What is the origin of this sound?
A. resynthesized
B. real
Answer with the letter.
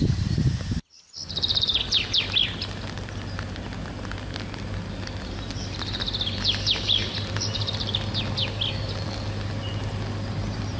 B